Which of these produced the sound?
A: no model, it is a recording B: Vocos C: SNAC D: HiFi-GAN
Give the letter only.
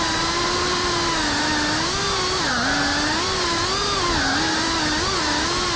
A